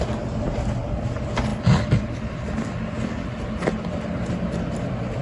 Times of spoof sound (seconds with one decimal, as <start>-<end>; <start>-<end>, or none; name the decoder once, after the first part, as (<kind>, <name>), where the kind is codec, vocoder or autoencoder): 1.5-2.2 (vocoder, BigVGAN v2)